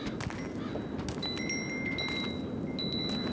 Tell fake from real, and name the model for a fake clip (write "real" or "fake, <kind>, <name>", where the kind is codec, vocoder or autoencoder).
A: real